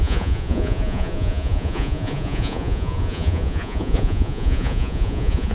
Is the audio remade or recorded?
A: remade